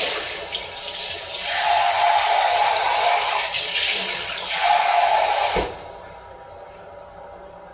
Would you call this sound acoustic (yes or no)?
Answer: yes